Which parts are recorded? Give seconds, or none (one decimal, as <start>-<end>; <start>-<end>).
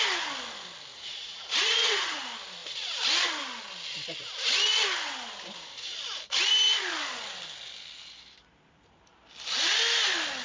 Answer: 0.0-0.9; 2.2-10.4